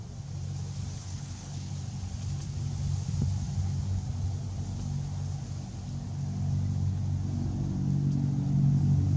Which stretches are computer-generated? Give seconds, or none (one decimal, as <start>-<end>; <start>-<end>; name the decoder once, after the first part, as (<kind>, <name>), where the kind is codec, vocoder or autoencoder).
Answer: 1.0-1.7 (codec, HILCodec)